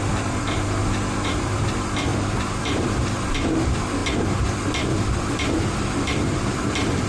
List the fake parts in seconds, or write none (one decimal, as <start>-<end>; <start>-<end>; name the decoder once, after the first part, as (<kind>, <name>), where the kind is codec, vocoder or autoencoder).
0.0-2.1 (vocoder, BigVGAN v2); 2.6-4.0; 5.2-7.1